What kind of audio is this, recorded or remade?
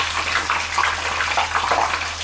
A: recorded